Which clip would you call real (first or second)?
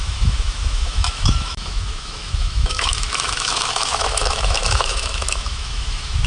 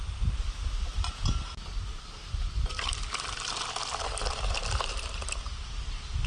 second